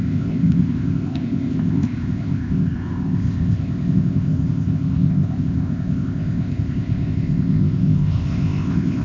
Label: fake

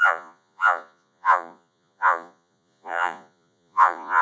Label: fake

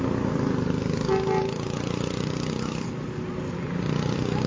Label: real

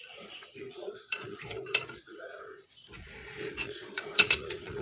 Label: fake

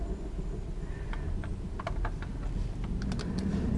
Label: real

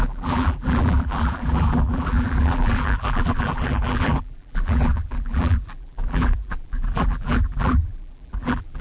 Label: fake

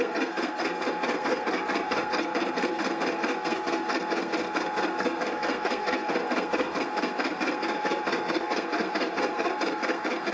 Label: fake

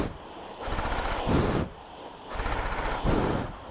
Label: real